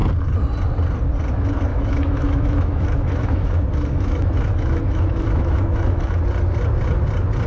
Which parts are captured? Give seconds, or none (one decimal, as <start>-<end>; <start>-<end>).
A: 0.0-1.7; 6.2-7.5